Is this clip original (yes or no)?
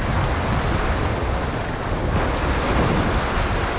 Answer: yes